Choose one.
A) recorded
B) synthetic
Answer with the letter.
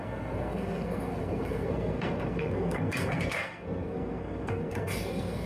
B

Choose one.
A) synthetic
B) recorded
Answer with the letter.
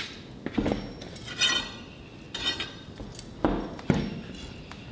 B